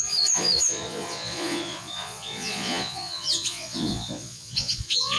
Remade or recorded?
remade